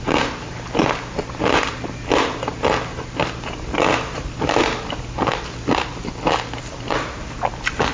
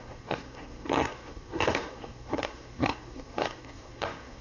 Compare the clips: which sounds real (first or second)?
first